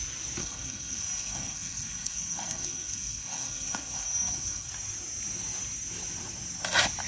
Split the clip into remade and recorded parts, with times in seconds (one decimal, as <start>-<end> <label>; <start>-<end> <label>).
0.0-0.4 recorded; 0.4-4.7 remade; 4.7-7.1 recorded